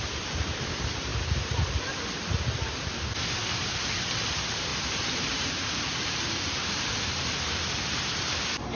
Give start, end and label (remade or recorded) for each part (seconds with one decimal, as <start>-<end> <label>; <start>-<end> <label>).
0.0-4.7 recorded; 4.7-7.0 remade; 7.0-8.8 recorded